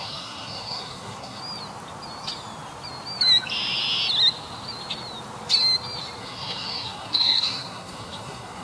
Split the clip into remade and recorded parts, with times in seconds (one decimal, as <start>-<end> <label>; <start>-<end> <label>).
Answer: 0.0-1.4 remade; 1.4-6.2 recorded; 6.2-8.6 remade